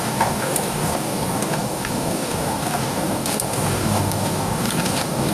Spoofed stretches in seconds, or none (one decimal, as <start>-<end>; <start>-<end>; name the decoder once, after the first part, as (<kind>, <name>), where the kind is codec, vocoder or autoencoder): 0.0-5.3 (codec, DAC)